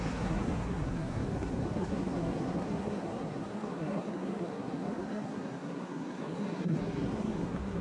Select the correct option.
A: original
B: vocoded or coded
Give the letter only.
B